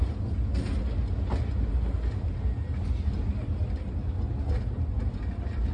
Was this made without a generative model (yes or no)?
yes